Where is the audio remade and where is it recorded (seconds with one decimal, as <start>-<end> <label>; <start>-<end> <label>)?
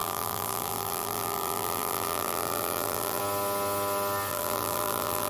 0.0-3.2 remade; 3.2-4.3 recorded; 4.3-5.3 remade